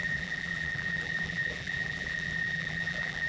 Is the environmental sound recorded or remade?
remade